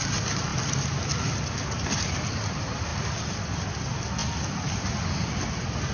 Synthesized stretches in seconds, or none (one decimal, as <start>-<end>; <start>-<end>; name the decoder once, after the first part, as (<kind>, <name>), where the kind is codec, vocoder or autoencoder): 0.5-1.4 (vocoder, BigVGAN v2); 2.9-3.4